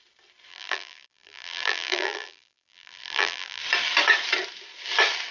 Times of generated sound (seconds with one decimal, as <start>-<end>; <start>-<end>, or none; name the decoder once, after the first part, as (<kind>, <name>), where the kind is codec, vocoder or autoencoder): 0.5-3.6 (vocoder, BigVGAN v2)